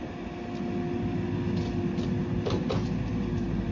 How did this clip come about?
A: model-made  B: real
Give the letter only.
B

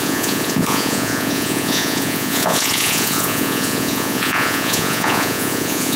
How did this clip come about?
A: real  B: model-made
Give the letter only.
B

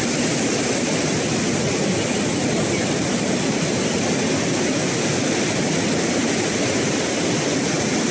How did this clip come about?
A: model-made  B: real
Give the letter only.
B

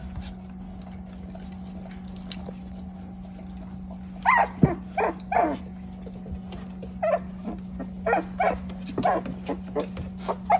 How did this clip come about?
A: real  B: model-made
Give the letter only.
A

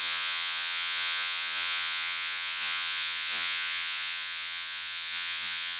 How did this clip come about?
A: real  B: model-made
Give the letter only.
B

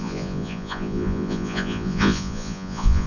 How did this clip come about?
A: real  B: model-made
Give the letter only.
B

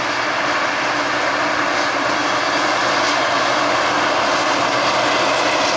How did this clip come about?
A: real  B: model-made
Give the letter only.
A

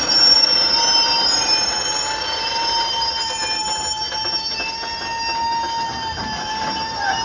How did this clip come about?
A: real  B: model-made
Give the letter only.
A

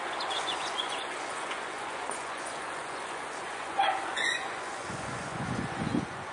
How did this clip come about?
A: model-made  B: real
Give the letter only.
A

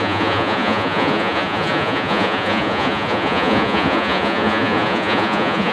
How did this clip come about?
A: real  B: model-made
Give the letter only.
B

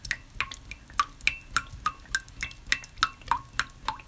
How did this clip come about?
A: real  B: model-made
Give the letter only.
A